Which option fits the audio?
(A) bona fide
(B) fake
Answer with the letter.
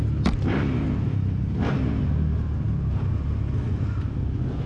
A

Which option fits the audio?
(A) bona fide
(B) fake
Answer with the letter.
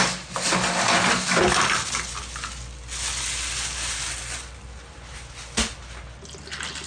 A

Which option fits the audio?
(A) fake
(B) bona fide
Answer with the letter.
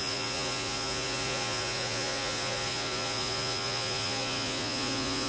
A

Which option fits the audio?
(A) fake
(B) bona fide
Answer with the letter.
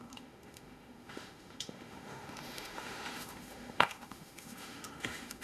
A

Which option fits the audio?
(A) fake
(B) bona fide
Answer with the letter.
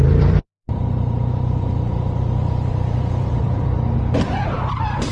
A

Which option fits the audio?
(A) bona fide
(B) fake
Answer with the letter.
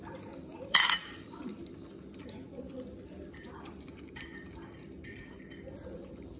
B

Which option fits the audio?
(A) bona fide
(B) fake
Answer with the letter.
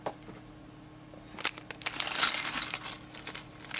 A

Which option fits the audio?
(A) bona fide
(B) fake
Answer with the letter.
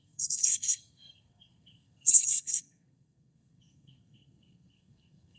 B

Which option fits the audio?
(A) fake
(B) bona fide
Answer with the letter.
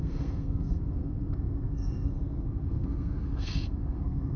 A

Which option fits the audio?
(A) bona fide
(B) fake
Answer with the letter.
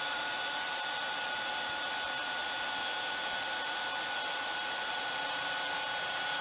A